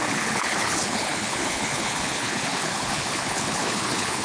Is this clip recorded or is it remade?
remade